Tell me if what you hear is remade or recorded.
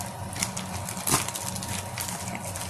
recorded